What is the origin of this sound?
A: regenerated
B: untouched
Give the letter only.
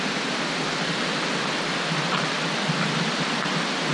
B